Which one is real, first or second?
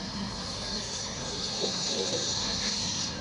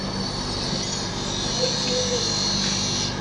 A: second